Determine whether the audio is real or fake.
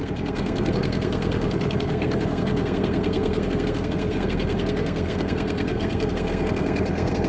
fake